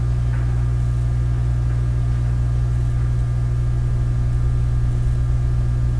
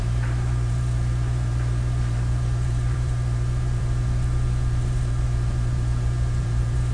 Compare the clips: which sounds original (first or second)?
first